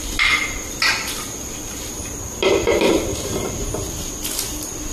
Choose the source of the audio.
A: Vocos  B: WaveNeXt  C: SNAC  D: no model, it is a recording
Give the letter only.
D